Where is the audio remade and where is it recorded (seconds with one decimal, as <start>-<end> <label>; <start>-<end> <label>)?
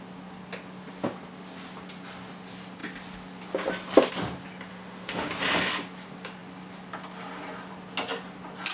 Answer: 0.0-4.7 recorded; 4.7-5.3 remade; 5.3-8.7 recorded